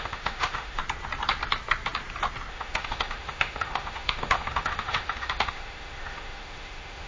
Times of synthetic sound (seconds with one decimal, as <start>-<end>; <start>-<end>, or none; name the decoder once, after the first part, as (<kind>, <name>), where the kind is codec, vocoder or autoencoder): 0.0-0.8 (autoencoder, DAC-VAE); 2.5-7.1